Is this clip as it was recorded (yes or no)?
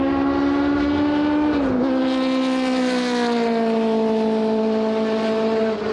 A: yes